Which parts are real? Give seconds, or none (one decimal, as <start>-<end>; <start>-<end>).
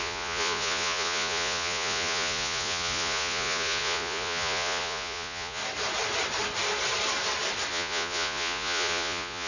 5.6-7.7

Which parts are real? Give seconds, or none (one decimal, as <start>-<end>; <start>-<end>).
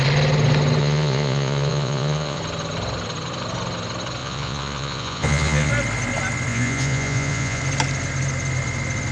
0.0-0.8; 2.4-4.2; 5.7-6.5; 7.6-9.1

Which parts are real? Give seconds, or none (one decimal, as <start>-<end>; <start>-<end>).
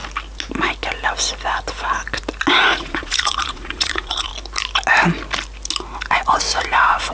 0.0-2.6; 4.3-6.1